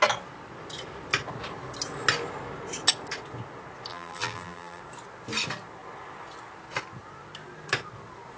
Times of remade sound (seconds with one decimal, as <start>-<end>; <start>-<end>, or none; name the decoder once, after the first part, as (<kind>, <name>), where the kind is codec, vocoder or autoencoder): 3.9-4.8 (vocoder, BigVGAN v2)